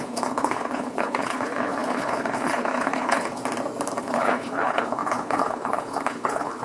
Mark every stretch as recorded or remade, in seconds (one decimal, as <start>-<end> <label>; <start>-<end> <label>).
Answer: 0.0-3.4 remade; 3.4-4.0 recorded; 4.0-6.6 remade